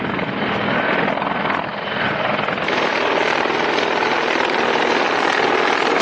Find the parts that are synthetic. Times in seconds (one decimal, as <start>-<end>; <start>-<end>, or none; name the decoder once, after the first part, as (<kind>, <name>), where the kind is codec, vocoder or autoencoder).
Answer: none